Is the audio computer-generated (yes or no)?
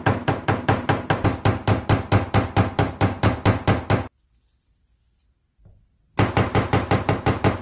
no